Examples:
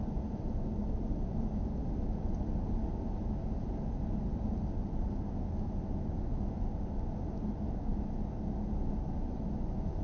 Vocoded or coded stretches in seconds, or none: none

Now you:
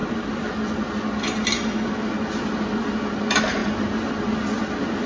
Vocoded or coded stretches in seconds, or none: none